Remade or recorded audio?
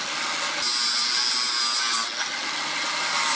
recorded